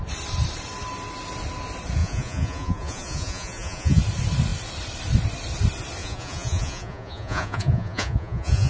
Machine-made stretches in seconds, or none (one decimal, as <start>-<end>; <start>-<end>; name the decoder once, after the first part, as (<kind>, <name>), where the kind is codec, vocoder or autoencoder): 2.0-4.0 (vocoder, Vocos); 6.0-8.7